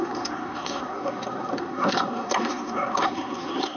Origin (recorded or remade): remade